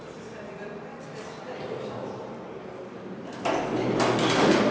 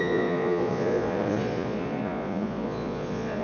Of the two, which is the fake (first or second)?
second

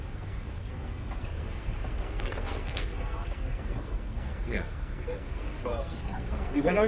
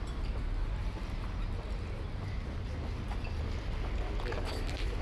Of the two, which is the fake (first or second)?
first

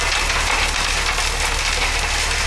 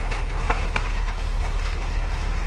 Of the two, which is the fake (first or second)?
second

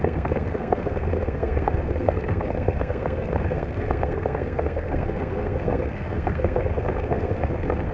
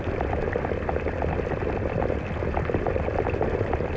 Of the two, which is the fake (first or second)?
first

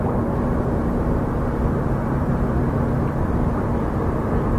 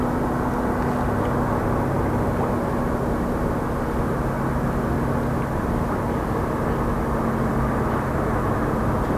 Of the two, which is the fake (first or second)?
first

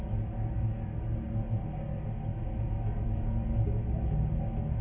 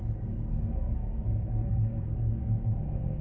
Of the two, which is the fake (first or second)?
second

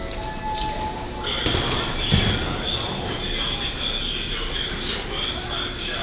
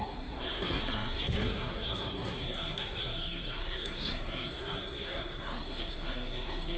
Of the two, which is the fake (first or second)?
second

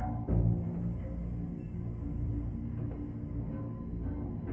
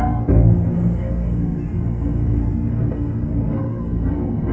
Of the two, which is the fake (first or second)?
second